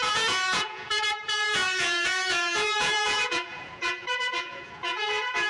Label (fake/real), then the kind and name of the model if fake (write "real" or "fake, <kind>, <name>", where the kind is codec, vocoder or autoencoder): fake, vocoder, Vocos